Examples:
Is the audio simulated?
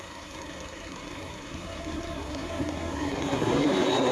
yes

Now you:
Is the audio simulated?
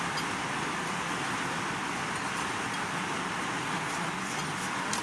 no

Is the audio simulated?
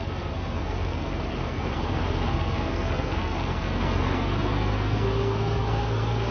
yes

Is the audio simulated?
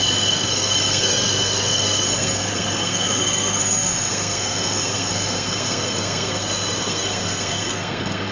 yes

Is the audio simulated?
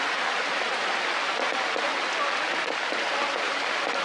no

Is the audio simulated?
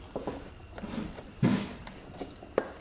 no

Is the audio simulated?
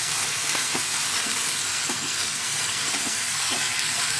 yes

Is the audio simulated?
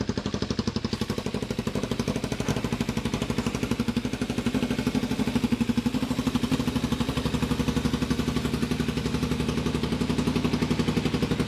no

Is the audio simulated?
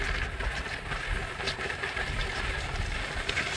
no